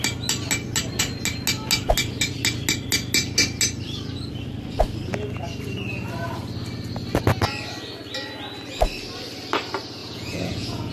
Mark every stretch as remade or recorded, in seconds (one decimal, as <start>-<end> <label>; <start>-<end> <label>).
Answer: 0.0-10.0 recorded; 10.0-10.9 remade